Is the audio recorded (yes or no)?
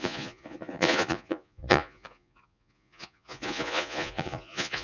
no